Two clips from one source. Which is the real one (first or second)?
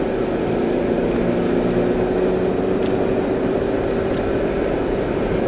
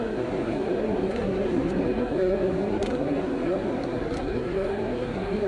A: first